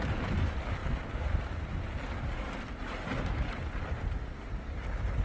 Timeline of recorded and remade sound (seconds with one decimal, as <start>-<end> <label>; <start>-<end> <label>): 0.0-5.2 recorded